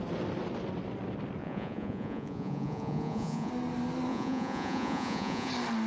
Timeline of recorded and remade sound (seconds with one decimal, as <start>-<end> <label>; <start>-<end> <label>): 0.0-1.4 recorded; 1.4-3.5 remade; 3.5-4.1 recorded; 4.1-5.5 remade; 5.5-5.9 recorded